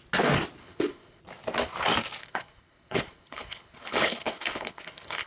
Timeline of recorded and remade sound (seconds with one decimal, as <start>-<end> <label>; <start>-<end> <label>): 0.0-0.6 recorded; 0.6-1.2 remade; 1.2-2.2 recorded; 2.2-5.3 remade